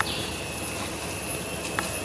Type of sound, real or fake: real